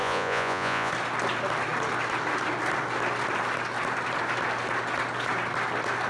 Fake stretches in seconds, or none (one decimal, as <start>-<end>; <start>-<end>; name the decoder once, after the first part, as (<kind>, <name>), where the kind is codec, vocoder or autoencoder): 0.0-0.9 (vocoder, Vocos)